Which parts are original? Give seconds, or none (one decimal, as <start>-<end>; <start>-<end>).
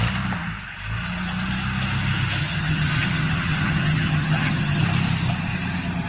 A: 0.0-2.4; 4.8-6.1